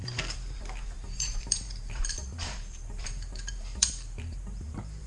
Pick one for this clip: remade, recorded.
remade